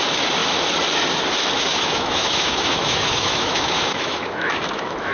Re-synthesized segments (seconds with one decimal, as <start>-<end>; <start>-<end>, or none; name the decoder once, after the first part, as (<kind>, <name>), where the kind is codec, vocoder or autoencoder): 1.7-5.1 (autoencoder, DAC-VAE)